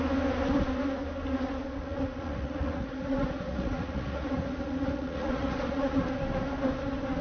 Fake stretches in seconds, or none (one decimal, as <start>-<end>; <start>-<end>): 1.8-6.1